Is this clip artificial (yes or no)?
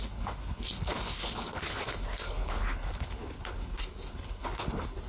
yes